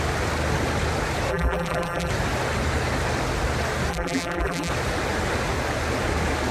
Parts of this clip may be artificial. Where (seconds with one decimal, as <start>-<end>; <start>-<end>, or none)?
1.3-2.1; 3.9-4.7